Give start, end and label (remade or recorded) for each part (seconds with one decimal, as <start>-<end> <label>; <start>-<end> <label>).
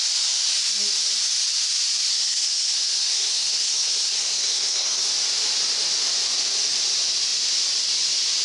0.0-2.1 recorded; 2.1-5.1 remade; 5.1-8.4 recorded